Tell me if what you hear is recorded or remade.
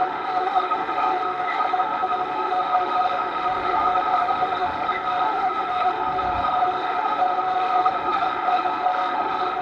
remade